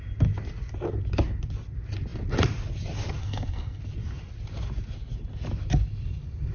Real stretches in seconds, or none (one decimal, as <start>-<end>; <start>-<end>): 0.0-3.2; 3.8-6.5